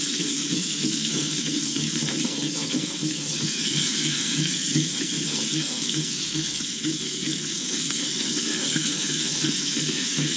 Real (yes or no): no